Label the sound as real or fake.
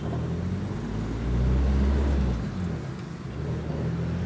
real